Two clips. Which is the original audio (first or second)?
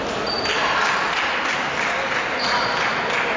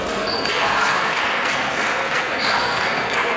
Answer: first